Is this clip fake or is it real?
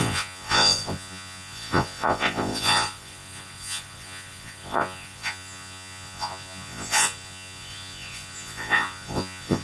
fake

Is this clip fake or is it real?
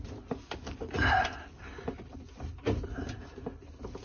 real